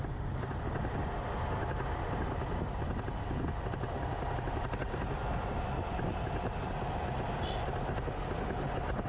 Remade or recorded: recorded